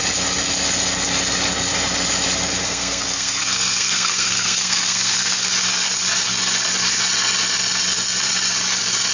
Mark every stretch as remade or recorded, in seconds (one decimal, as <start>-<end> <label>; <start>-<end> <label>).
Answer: 0.0-2.6 recorded; 2.6-5.5 remade; 5.5-9.1 recorded